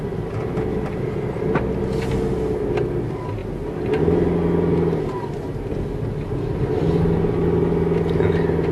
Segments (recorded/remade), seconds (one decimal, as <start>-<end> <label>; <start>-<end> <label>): 0.0-3.4 recorded; 3.4-6.6 remade; 6.6-8.7 recorded